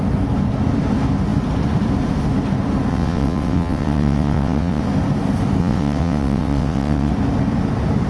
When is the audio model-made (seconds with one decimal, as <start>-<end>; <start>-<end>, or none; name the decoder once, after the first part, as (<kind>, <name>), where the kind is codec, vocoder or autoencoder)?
2.9-4.8 (vocoder, WaveNeXt); 5.6-7.1